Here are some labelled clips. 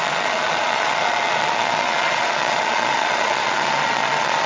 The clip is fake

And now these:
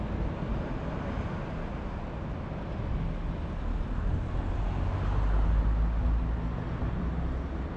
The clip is real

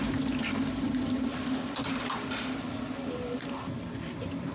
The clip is real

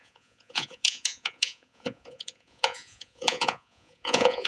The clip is fake